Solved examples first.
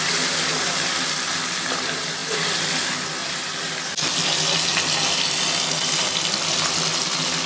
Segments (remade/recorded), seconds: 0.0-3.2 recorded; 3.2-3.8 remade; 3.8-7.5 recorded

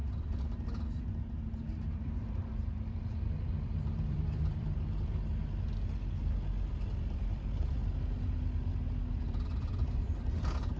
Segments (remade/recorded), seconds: 0.0-1.6 recorded; 1.6-5.4 remade; 5.4-6.2 recorded; 6.2-7.8 remade; 7.8-9.1 recorded; 9.1-10.8 remade

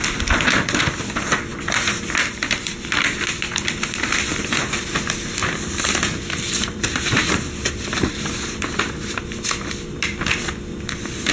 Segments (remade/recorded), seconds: 0.0-5.4 recorded; 5.4-8.9 remade; 8.9-11.3 recorded

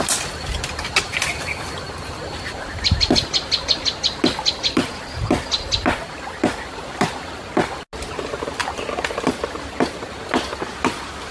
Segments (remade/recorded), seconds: 0.0-11.3 recorded

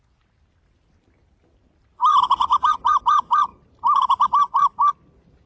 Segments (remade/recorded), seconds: 0.0-2.1 recorded; 2.1-3.0 remade; 3.0-3.5 recorded; 3.5-4.9 remade; 4.9-5.5 recorded